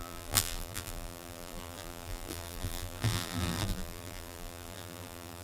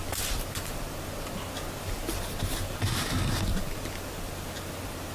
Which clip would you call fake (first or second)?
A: first